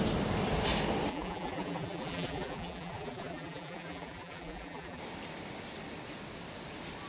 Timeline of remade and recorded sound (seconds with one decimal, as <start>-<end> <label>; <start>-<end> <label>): 0.0-1.1 recorded; 1.1-5.0 remade; 5.0-7.1 recorded